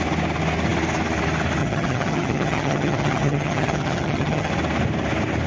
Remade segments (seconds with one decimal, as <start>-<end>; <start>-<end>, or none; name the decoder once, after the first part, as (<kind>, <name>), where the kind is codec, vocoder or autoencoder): 1.6-4.5 (vocoder, HiFi-GAN)